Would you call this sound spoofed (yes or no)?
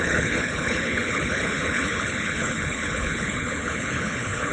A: yes